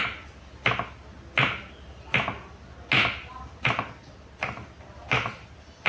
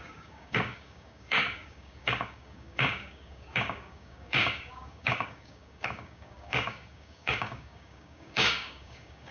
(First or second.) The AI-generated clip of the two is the second